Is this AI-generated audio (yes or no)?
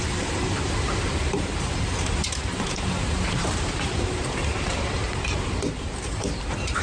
yes